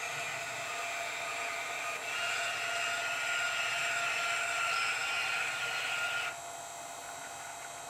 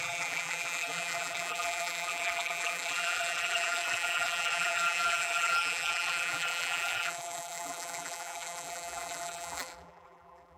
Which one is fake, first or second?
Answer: second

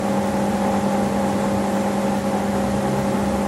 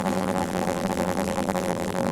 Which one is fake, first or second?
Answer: second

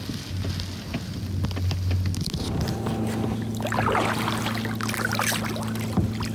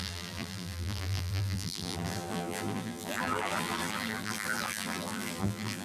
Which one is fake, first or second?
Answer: second